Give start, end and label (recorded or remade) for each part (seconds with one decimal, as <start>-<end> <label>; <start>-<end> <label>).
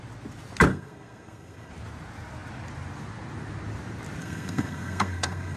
0.0-0.7 recorded; 0.7-1.7 remade; 1.7-4.2 recorded; 4.2-5.6 remade